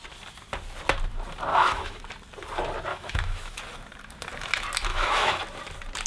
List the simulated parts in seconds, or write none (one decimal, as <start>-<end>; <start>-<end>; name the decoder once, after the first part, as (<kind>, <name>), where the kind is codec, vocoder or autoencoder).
1.5-2.0 (autoencoder, DAC-VAE); 2.9-3.6; 4.9-5.4